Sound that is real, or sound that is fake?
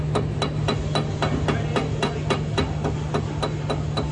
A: real